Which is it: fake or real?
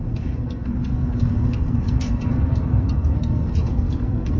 fake